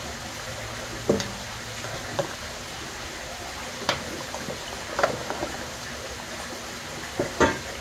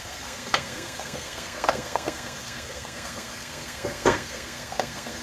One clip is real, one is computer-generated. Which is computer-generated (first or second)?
second